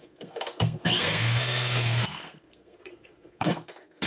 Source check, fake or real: fake